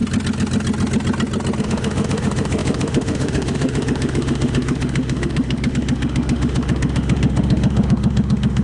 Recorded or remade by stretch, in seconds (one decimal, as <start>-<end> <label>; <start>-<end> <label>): 0.0-1.6 recorded; 1.6-8.6 remade